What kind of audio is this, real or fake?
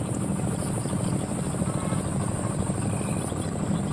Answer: fake